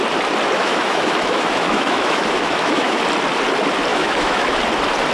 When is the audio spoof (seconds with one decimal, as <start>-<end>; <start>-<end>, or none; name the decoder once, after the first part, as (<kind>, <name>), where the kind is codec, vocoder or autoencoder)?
0.6-3.0 (autoencoder, DAC-VAE); 3.9-4.6